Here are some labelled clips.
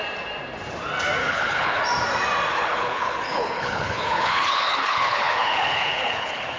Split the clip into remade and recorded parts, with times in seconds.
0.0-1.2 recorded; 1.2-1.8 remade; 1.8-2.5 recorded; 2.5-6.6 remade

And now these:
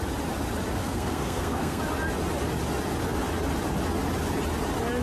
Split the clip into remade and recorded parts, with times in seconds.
0.0-0.8 recorded; 0.8-1.8 remade; 1.8-5.0 recorded

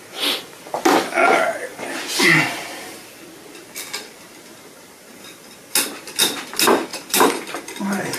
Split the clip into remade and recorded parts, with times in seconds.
0.0-6.9 recorded; 6.9-8.2 remade

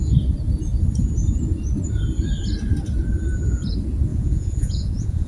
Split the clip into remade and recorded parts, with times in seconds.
0.0-4.1 recorded; 4.1-5.3 remade

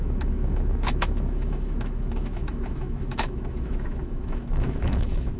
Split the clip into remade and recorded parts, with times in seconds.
0.0-5.4 remade

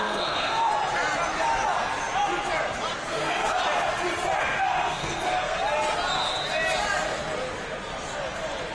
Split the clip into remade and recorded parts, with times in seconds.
0.0-0.7 remade; 0.7-3.0 recorded; 3.0-3.6 remade; 3.6-4.4 recorded; 4.4-5.6 remade; 5.6-8.7 recorded